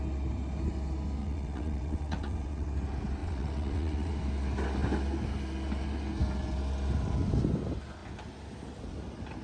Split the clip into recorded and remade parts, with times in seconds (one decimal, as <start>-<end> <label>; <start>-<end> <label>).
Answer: 0.0-1.2 recorded; 1.2-2.7 remade; 2.7-3.2 recorded; 3.2-4.1 remade; 4.1-9.4 recorded